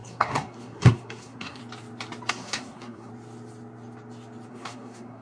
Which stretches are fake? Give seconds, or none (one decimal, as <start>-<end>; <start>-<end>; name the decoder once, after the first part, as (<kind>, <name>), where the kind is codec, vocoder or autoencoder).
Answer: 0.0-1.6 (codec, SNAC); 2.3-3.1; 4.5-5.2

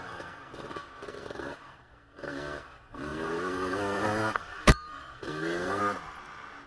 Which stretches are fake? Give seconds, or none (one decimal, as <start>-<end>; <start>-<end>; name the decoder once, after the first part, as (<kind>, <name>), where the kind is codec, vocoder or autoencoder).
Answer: 0.0-5.8 (codec, SNAC)

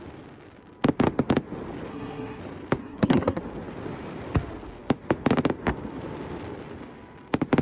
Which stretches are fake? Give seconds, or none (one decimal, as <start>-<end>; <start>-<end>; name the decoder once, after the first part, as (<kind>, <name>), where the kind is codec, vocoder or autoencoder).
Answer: 1.9-2.4 (codec, SNAC); 2.8-3.4